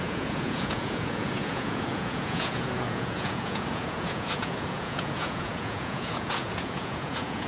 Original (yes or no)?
no